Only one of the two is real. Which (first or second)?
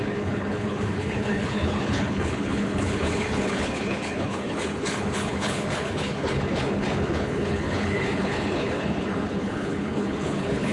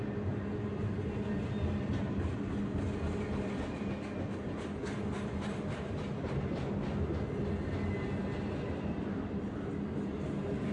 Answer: second